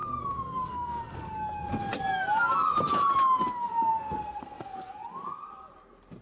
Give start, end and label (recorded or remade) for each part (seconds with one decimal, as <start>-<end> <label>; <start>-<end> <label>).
0.0-1.0 remade; 1.0-4.2 recorded; 4.2-4.7 remade; 4.7-6.2 recorded